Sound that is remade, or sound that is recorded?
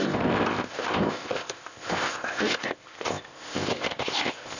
remade